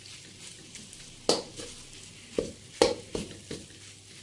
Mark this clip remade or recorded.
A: recorded